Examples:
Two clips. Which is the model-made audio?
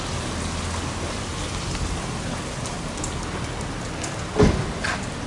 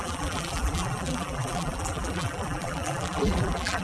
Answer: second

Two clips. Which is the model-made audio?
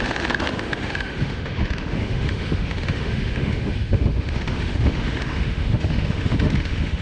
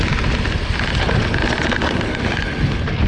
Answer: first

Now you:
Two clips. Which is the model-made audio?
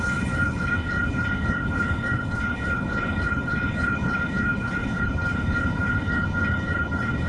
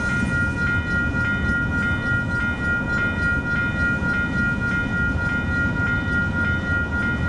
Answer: first